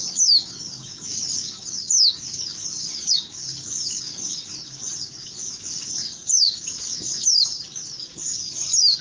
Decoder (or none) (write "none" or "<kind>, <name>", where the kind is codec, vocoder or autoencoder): codec, DAC